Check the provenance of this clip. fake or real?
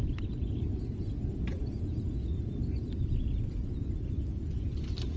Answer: real